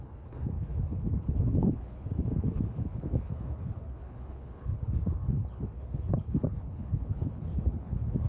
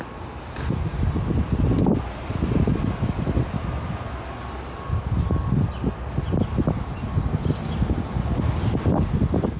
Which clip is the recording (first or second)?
second